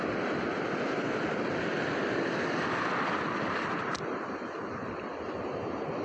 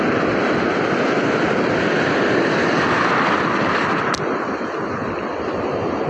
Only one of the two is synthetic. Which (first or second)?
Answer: first